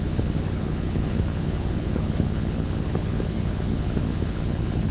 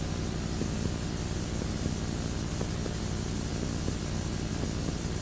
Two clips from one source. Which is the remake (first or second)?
first